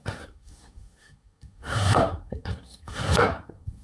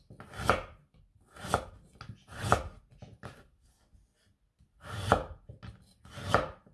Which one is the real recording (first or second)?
second